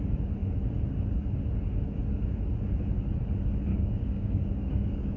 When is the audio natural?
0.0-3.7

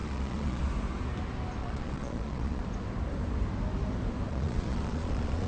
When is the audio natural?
0.6-1.6; 2.6-4.3

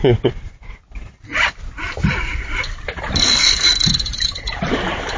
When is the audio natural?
1.3-2.6